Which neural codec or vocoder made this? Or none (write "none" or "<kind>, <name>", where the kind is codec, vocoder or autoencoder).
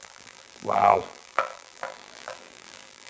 vocoder, BigVGAN v2